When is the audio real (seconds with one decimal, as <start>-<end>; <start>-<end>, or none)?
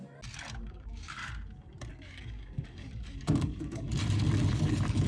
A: 0.0-0.6; 1.2-1.9; 4.0-4.5